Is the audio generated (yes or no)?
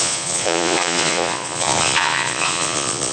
yes